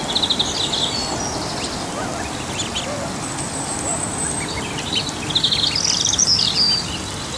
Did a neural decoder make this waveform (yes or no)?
no